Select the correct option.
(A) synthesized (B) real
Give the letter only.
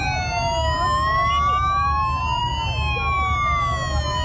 B